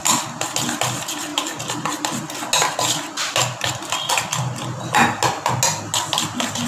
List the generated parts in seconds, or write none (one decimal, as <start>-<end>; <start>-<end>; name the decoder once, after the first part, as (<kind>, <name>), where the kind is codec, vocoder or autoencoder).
none